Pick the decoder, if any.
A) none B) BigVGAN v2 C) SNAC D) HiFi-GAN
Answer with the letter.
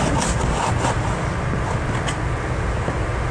A